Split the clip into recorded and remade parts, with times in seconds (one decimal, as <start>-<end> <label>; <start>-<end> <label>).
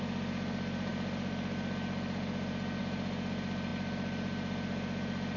0.0-5.4 recorded